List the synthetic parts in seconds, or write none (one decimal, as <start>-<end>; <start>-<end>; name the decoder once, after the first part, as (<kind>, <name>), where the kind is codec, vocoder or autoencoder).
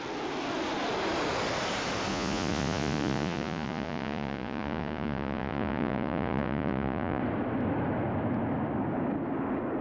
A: 2.1-7.2 (vocoder, Vocos)